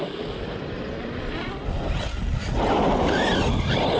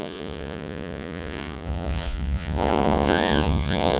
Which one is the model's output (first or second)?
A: second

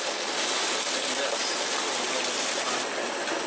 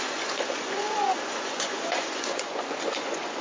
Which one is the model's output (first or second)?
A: second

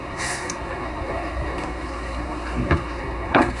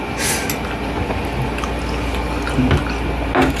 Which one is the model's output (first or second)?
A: first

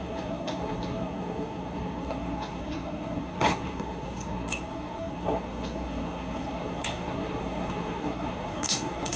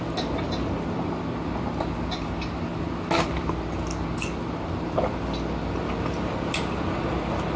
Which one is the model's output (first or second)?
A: first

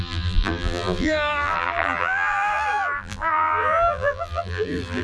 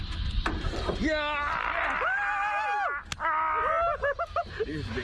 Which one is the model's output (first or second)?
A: first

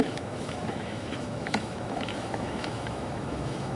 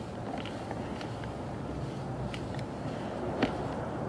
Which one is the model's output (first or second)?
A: first